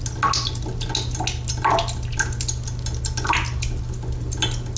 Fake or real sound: real